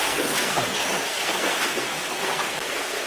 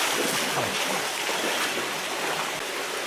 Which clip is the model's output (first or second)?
first